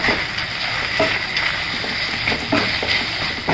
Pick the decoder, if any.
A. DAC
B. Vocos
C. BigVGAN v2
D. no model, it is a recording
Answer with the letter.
D